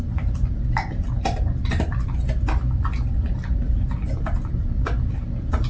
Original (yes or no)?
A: yes